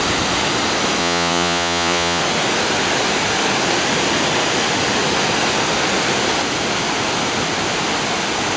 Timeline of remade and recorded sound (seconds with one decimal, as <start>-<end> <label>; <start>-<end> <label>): 0.0-1.0 recorded; 1.0-2.2 remade; 2.2-8.6 recorded